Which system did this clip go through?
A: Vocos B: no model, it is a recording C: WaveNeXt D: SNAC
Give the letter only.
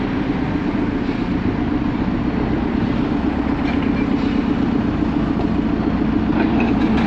B